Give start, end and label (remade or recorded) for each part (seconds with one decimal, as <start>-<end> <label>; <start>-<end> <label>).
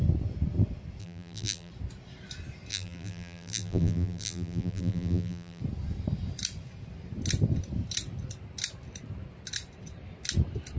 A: 0.0-1.0 recorded; 1.0-1.7 remade; 1.7-2.7 recorded; 2.7-5.6 remade; 5.6-10.8 recorded